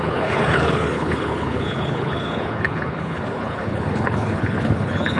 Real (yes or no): no